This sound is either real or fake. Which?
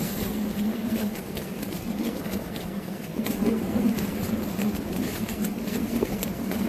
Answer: fake